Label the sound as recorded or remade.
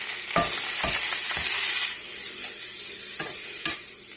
recorded